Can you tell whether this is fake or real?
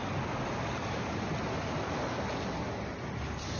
real